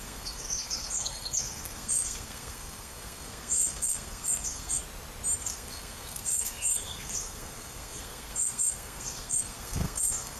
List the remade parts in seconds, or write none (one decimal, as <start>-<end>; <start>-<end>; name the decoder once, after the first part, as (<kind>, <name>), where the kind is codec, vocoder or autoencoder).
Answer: 0.0-4.8 (codec, SNAC); 5.4-10.4